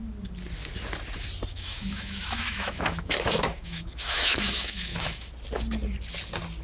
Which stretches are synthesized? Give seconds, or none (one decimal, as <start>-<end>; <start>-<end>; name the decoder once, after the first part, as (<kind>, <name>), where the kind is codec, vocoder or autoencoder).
1.5-5.3 (autoencoder, DAC-VAE)